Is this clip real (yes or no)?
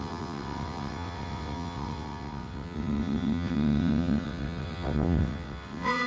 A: no